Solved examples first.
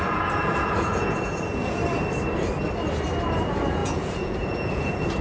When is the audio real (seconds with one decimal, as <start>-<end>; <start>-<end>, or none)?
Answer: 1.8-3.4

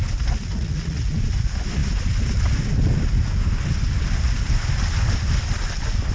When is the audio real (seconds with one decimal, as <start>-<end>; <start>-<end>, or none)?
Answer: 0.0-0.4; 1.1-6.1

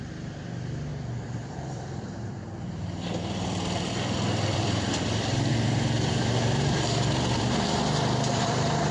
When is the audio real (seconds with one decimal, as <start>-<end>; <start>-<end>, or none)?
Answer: none